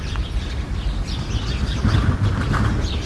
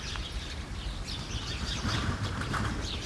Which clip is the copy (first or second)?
second